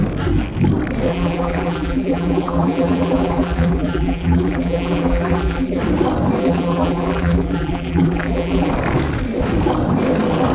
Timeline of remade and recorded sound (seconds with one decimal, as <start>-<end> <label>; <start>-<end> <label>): 0.0-1.1 recorded; 1.1-5.8 remade; 5.8-6.4 recorded; 6.4-8.7 remade; 8.7-10.5 recorded

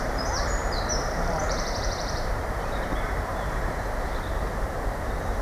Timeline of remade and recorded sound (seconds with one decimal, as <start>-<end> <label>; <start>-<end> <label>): 0.0-0.6 recorded; 0.6-3.8 remade; 3.8-5.4 recorded

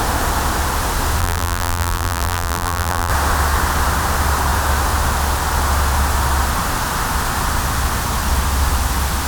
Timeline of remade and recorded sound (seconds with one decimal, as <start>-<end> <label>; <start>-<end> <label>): 0.0-1.2 recorded; 1.2-3.1 remade; 3.1-9.3 recorded

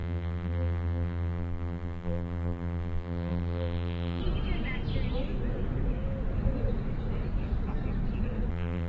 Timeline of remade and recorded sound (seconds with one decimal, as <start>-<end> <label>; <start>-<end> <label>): 0.0-4.2 remade; 4.2-8.5 recorded; 8.5-8.9 remade